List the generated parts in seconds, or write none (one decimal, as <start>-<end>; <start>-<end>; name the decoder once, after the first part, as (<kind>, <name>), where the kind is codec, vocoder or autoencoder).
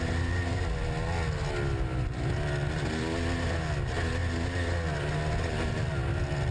none